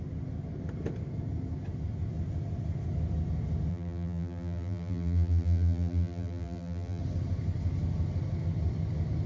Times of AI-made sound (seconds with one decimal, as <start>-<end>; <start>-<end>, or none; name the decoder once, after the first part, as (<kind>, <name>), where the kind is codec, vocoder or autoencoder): 3.7-7.0 (vocoder, BigVGAN v2)

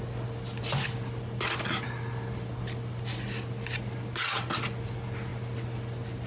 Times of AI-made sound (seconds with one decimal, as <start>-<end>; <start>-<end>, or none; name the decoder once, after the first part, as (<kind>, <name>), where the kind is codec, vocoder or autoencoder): none

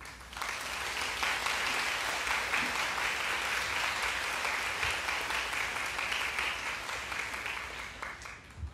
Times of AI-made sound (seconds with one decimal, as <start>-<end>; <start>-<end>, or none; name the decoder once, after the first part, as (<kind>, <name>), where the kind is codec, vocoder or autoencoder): 5.7-7.3 (vocoder, BigVGAN v2)

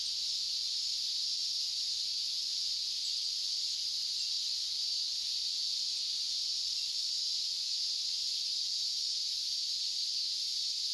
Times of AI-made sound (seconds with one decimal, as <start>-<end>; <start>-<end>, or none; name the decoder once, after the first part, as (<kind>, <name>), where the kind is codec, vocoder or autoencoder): 6.5-7.2 (vocoder, BigVGAN v2)

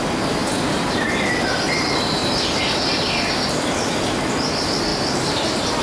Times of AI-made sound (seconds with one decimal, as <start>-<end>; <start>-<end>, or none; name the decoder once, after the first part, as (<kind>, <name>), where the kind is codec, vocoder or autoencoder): 0.4-1.3 (vocoder, BigVGAN v2); 2.2-3.7; 4.9-5.8